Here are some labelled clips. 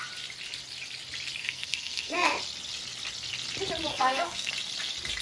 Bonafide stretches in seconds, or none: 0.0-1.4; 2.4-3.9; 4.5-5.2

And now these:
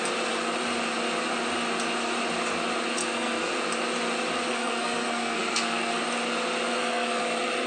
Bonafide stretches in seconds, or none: 0.0-3.0; 3.5-4.5; 6.0-6.7; 7.2-7.7

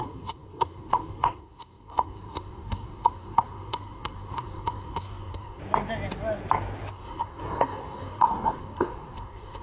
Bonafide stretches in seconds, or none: 5.6-6.9

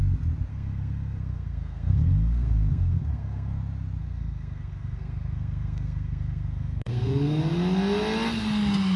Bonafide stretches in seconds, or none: 0.0-0.5; 3.6-4.0; 7.4-9.0